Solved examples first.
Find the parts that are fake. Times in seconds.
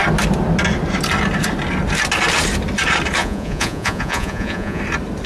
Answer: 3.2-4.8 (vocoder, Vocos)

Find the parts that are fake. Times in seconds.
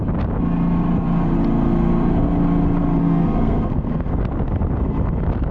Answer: 3.0-4.1 (codec, SNAC)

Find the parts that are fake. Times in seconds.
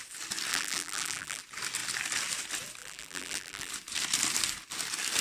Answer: 0.5-1.4 (vocoder, BigVGAN v2); 2.8-3.7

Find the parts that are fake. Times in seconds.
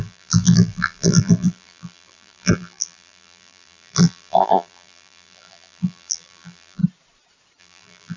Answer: 0.0-6.8 (vocoder, BigVGAN v2); 7.6-8.2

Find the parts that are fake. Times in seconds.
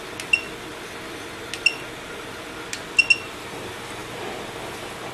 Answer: 0.7-3.3 (vocoder, BigVGAN v2)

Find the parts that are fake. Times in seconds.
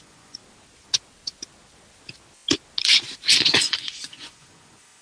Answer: 0.0-0.4 (vocoder, Vocos); 3.4-5.0